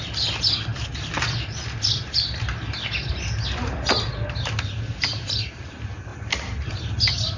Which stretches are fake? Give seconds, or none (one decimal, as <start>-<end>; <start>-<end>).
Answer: none

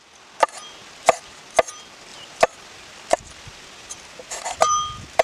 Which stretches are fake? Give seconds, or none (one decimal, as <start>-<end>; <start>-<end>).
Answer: none

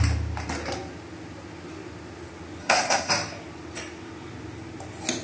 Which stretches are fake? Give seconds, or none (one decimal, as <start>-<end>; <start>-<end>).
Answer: 2.6-3.1

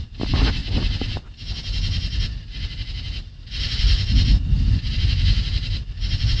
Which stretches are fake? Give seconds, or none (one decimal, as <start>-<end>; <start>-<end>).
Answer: none

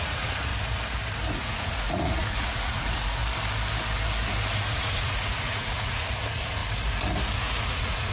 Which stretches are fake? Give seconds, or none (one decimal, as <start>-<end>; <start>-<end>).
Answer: 0.0-0.5; 1.3-3.2; 4.7-6.6; 7.4-8.1

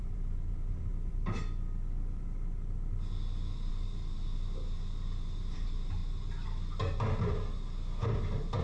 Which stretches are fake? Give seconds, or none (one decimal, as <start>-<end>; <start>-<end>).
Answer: 0.0-0.9; 3.7-6.0

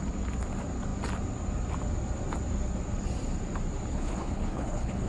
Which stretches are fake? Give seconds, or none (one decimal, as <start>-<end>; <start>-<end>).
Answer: 3.9-5.1

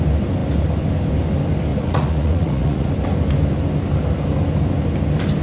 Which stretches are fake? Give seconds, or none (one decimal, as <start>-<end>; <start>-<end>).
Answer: 1.7-2.9